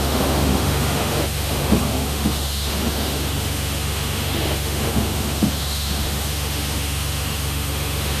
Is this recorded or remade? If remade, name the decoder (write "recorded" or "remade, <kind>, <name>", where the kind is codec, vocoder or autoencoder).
remade, autoencoder, DAC-VAE